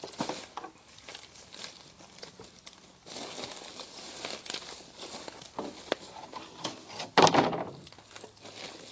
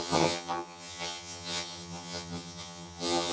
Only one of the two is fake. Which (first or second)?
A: second